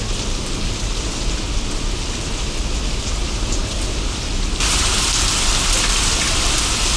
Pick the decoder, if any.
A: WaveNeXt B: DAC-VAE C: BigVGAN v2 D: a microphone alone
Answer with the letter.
D